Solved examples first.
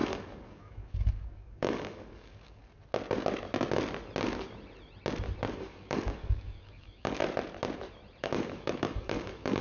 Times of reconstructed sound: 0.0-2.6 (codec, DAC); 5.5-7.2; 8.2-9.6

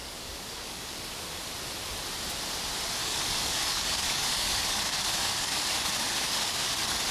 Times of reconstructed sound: 0.0-1.0 (codec, DAC); 3.0-7.1

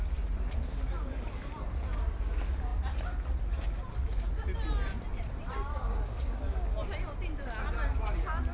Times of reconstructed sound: 5.8-6.4 (codec, DAC)

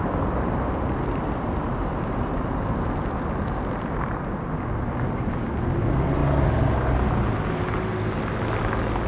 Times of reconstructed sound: none

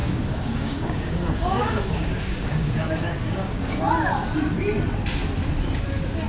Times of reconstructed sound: 0.0-3.8 (codec, DAC)

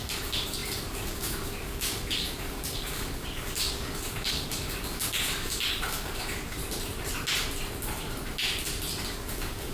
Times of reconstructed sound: 0.0-6.6 (codec, DAC); 9.1-9.7